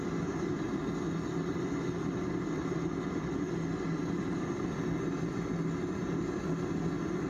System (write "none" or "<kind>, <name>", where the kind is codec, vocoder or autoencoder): none